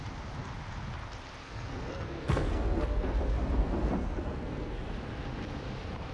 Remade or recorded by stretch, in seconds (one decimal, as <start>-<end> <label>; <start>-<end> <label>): 0.0-1.4 recorded; 1.4-4.9 remade; 4.9-6.1 recorded